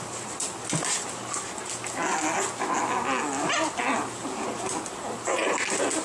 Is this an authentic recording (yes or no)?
yes